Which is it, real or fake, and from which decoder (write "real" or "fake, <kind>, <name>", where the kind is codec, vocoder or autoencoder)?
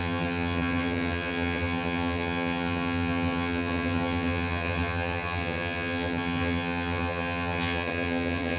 fake, vocoder, HiFi-GAN